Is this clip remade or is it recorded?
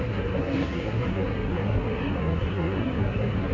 remade